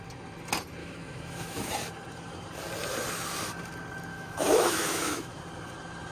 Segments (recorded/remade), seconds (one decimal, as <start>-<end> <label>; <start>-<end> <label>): 0.0-0.8 recorded; 0.8-1.7 remade; 1.7-4.1 recorded; 4.1-5.4 remade; 5.4-6.1 recorded